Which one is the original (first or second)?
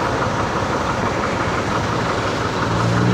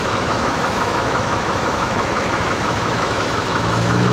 first